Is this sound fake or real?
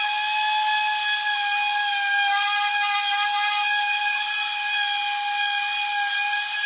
real